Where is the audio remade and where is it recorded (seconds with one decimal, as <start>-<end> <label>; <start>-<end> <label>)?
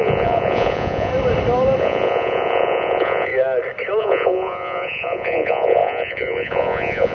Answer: 0.0-1.1 remade; 1.1-1.8 recorded; 1.8-3.3 remade; 3.3-4.0 recorded; 4.0-7.1 remade